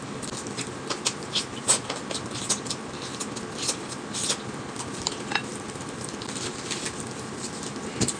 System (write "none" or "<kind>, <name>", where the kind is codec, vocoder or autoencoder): none